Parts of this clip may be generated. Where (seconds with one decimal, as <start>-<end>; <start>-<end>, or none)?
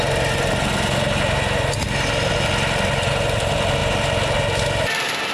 3.8-5.3